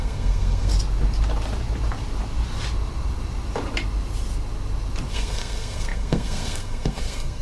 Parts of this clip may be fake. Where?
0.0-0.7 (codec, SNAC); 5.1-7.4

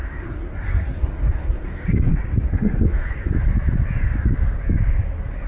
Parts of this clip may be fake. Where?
0.0-3.3 (codec, SNAC)

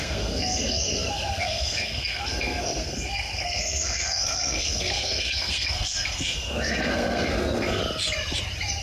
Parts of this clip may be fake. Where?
0.0-7.8 (codec, SNAC)